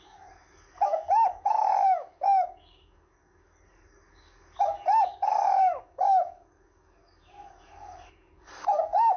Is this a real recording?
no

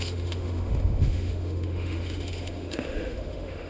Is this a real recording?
no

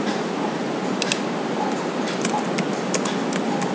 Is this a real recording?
yes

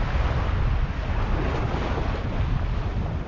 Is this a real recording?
yes